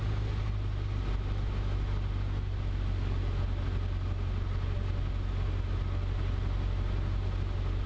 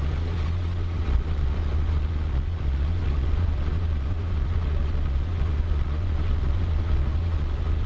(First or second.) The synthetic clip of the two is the second